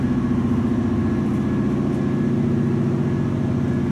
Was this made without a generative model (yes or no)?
yes